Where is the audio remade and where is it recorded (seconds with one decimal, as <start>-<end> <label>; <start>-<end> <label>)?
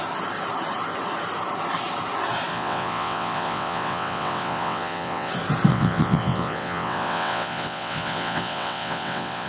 0.0-2.5 recorded; 2.5-5.3 remade; 5.3-5.7 recorded; 5.7-9.5 remade